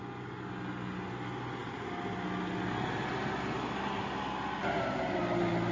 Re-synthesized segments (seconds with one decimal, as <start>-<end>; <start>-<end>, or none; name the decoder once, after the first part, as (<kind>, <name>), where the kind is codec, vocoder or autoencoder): none